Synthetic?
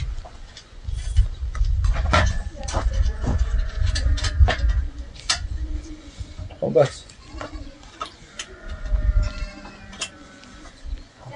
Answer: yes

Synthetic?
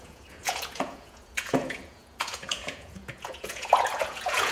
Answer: yes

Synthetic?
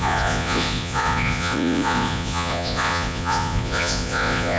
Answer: yes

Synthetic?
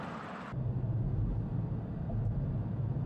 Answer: no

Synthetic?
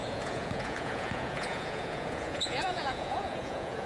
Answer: yes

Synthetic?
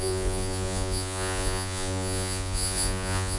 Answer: yes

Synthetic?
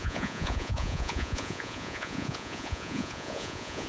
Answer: yes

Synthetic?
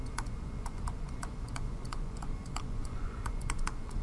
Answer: yes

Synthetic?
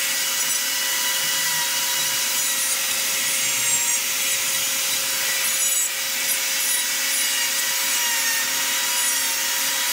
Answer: no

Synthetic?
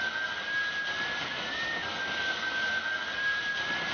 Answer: no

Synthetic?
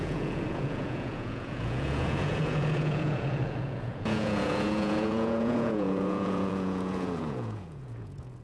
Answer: yes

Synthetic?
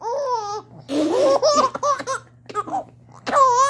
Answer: no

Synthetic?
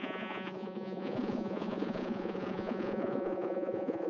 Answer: yes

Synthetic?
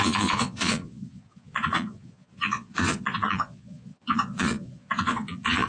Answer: yes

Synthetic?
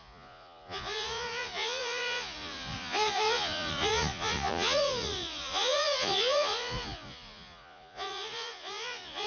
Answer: yes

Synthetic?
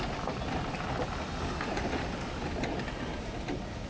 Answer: no